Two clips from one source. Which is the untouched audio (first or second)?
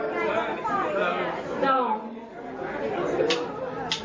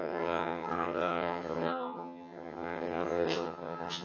first